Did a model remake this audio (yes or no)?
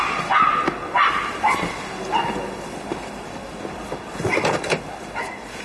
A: no